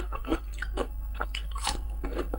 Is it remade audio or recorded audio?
remade